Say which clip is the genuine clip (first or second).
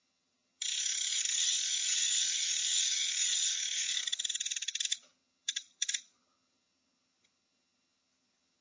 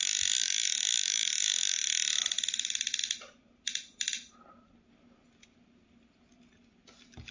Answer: second